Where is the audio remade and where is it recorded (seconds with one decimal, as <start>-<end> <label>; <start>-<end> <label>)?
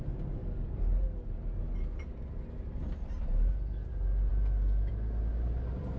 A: 0.0-6.0 recorded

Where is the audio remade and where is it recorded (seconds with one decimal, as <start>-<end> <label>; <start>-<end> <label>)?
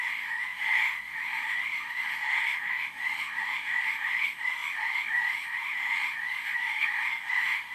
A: 0.0-7.7 remade